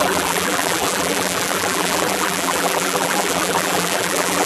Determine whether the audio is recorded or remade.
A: remade